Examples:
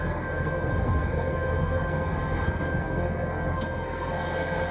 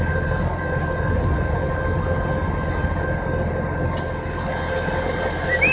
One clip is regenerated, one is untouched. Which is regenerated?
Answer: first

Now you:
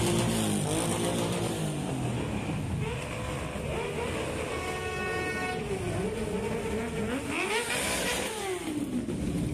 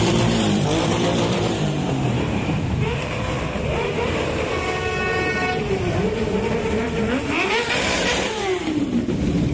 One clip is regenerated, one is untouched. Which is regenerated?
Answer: second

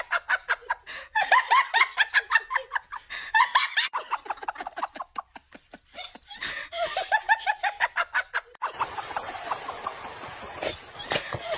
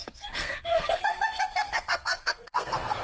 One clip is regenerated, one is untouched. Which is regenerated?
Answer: second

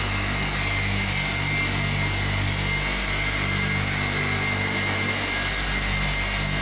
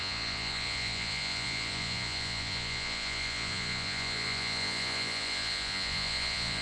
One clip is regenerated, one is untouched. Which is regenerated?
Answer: second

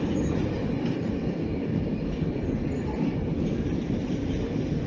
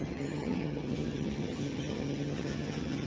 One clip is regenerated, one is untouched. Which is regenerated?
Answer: second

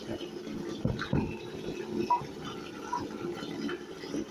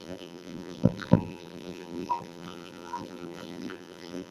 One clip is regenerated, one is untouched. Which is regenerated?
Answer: second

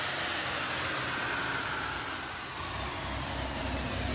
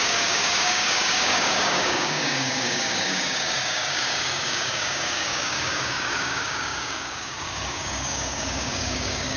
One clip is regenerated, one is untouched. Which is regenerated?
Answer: second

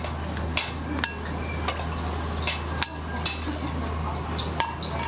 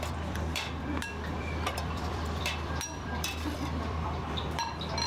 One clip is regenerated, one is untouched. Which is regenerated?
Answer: second